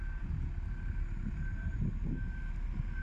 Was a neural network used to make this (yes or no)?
no